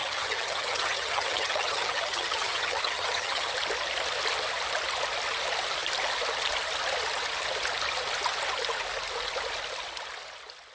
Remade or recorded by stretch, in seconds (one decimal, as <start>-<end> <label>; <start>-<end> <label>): 0.0-3.5 remade; 3.5-10.7 recorded